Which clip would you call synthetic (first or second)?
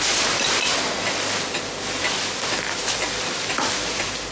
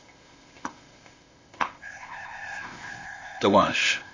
second